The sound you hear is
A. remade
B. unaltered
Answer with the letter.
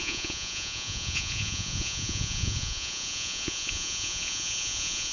A